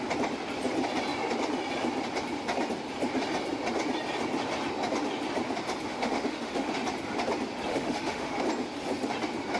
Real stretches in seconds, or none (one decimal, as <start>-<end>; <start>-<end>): 0.0-5.9; 6.7-7.7; 8.4-9.6